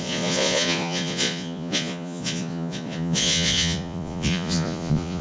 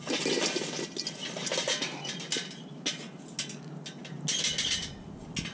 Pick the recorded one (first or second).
second